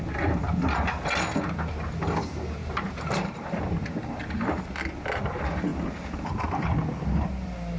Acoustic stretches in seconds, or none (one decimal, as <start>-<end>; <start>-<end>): 0.0-2.6; 4.9-7.8